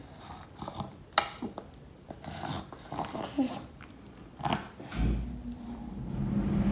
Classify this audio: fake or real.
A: real